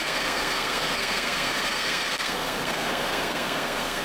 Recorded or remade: remade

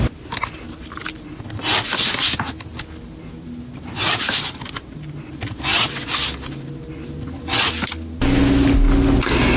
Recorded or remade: recorded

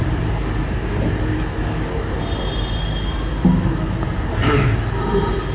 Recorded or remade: recorded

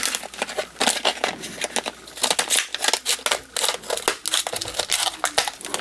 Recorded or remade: recorded